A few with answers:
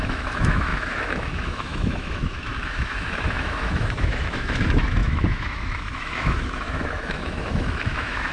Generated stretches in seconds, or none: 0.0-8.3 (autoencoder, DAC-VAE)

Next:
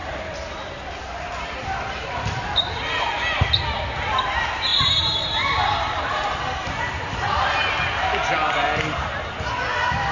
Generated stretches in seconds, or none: 4.7-7.7 (vocoder, BigVGAN v2)

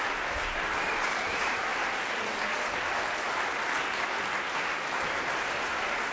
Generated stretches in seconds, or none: 0.0-1.7 (vocoder, BigVGAN v2); 5.4-6.1